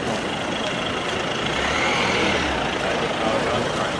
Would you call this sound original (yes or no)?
yes